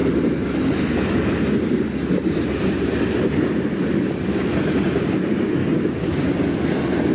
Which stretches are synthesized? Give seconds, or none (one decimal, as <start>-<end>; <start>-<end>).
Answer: 5.6-6.3